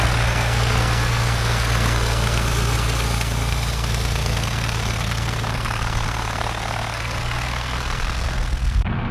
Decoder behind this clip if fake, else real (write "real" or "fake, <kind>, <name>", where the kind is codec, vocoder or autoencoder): fake, codec, SNAC